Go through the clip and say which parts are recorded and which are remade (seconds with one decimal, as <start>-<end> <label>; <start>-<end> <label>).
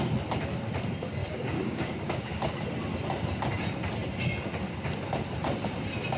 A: 0.0-1.2 recorded; 1.2-2.5 remade; 2.5-6.2 recorded